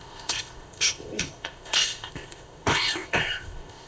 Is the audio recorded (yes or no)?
no